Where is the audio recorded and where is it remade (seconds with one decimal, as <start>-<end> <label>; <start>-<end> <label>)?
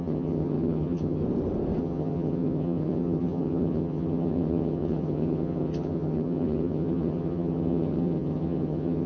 0.0-1.2 remade; 1.2-1.8 recorded; 1.8-9.1 remade